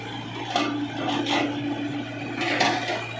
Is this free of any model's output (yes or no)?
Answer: yes